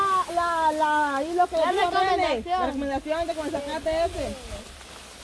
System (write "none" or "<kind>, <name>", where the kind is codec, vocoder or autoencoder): none